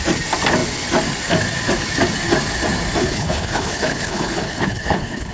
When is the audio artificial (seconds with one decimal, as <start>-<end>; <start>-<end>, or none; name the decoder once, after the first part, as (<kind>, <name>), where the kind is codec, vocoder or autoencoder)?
3.0-5.3 (codec, HILCodec)